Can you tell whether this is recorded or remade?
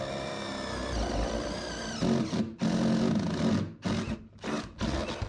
recorded